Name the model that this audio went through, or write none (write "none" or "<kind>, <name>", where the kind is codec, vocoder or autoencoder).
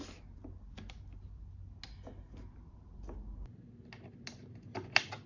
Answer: none